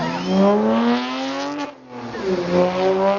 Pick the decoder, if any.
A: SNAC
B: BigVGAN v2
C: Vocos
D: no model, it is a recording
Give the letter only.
D